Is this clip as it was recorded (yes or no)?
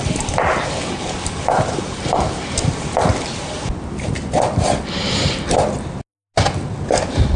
yes